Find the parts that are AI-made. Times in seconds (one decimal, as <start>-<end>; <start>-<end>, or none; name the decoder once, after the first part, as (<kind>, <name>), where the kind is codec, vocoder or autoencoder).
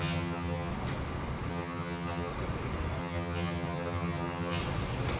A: 0.0-0.7 (vocoder, HiFi-GAN); 1.5-2.3; 3.0-4.6